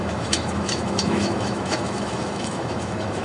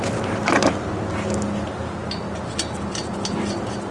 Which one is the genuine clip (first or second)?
second